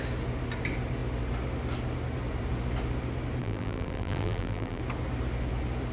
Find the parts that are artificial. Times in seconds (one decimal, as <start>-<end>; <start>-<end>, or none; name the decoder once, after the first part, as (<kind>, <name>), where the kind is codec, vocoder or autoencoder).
3.4-4.8 (vocoder, BigVGAN v2)